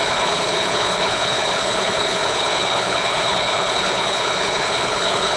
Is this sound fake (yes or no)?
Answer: yes